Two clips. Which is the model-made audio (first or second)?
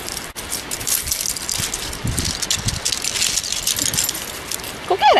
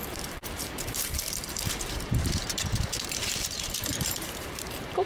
second